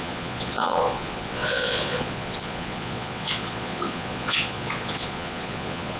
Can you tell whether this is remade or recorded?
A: remade